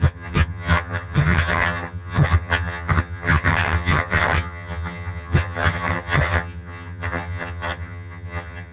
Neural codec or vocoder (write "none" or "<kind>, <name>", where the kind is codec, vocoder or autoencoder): vocoder, HiFi-GAN